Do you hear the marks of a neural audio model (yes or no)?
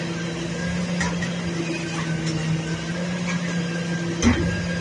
no